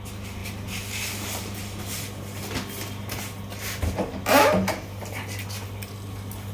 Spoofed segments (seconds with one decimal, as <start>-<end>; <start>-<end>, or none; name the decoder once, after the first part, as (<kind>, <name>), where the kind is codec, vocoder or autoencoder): none